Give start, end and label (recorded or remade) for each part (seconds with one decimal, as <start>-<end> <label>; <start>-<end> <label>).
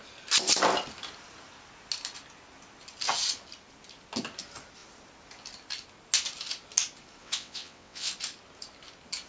0.0-7.2 recorded; 7.2-8.1 remade; 8.1-9.3 recorded